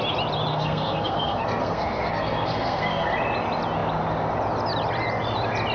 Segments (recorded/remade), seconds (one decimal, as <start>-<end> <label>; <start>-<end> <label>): 0.0-0.5 recorded; 0.5-3.1 remade; 3.1-5.7 recorded